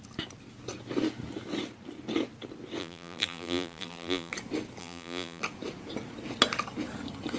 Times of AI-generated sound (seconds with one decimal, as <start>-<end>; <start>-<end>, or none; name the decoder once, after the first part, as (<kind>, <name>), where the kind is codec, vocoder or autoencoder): 2.8-4.3 (vocoder, BigVGAN v2); 4.8-5.4